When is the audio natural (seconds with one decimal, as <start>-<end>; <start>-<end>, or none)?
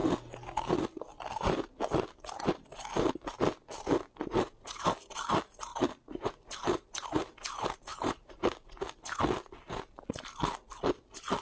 0.0-5.7; 6.3-7.9; 8.7-11.4